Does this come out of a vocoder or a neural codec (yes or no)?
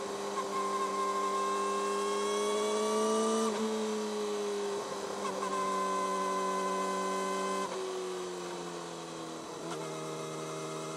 no